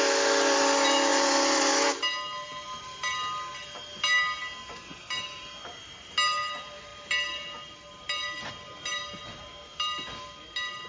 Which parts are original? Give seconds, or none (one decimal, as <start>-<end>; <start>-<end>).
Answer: 0.0-10.9